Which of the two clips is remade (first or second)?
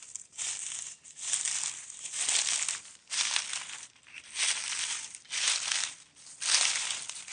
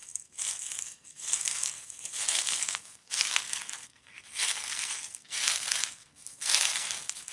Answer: second